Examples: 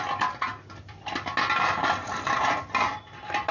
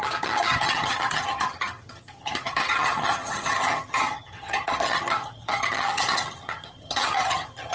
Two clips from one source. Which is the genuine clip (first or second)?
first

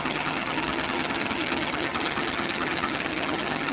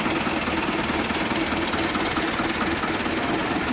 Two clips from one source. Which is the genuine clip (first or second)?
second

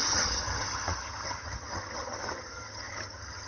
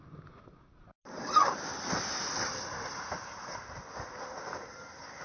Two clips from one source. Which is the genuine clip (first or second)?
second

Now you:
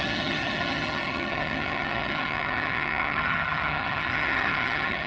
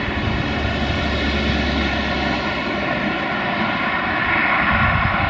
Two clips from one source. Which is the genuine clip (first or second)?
second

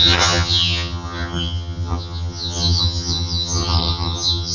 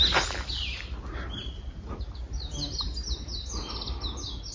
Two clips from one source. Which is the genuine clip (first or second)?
second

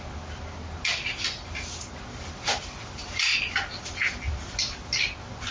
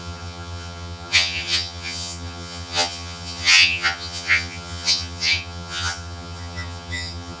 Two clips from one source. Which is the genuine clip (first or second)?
first